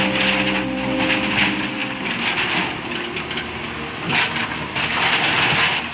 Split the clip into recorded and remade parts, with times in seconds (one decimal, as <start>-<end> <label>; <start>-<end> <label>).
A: 0.0-5.9 recorded